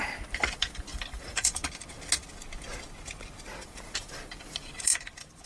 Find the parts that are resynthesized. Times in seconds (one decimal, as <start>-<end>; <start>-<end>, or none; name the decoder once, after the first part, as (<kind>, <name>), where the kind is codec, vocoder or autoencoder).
0.0-1.6 (vocoder, BigVGAN v2); 3.6-4.9